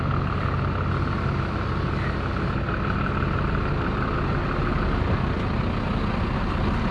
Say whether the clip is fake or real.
real